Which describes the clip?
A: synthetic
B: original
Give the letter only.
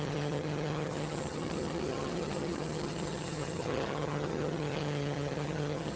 A